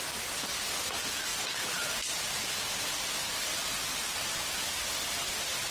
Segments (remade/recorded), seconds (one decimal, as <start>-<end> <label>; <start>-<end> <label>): 0.0-5.7 recorded